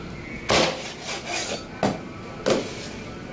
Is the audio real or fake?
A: real